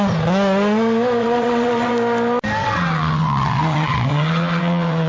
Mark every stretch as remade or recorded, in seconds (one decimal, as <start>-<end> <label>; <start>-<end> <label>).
0.0-1.2 recorded; 1.2-1.9 remade; 1.9-2.6 recorded; 2.6-5.1 remade

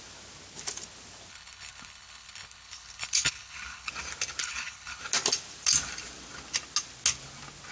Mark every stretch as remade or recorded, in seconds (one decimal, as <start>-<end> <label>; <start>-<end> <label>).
0.0-1.3 recorded; 1.3-3.9 remade; 3.9-4.4 recorded; 4.4-5.0 remade; 5.0-7.7 recorded

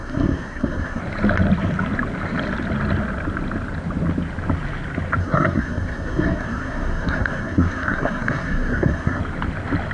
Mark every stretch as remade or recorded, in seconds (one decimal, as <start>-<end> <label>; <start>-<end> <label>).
0.0-1.0 remade; 1.0-5.2 recorded; 5.2-9.2 remade; 9.2-9.9 recorded

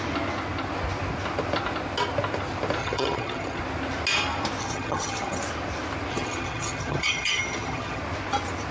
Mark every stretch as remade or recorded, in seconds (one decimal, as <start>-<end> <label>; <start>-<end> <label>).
0.0-2.8 recorded; 2.8-3.6 remade; 3.6-4.6 recorded; 4.6-5.4 remade; 5.4-6.1 recorded; 6.1-8.0 remade; 8.0-8.7 recorded

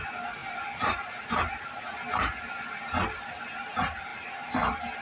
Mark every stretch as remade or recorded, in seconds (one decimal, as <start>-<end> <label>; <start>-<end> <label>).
0.0-5.0 recorded

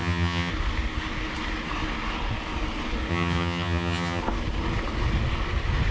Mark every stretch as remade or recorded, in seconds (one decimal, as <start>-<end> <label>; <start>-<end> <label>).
0.0-0.5 remade; 0.5-3.1 recorded; 3.1-4.2 remade; 4.2-5.9 recorded